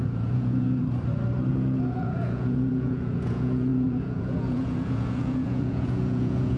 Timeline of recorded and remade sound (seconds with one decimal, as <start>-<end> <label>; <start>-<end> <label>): 0.0-0.8 remade; 0.8-1.5 recorded; 1.5-6.6 remade

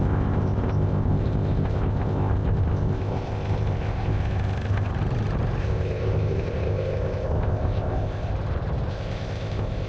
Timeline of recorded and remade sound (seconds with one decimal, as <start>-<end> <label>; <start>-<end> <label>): 0.0-4.9 remade; 4.9-5.6 recorded; 5.6-8.3 remade; 8.3-8.9 recorded; 8.9-9.9 remade